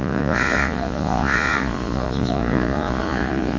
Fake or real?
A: fake